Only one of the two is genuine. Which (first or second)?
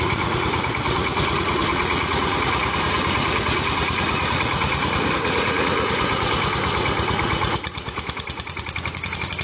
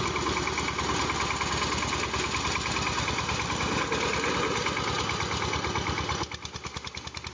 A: second